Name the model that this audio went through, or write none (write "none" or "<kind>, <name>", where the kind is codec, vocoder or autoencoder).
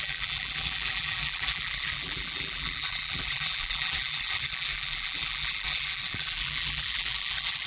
vocoder, BigVGAN v2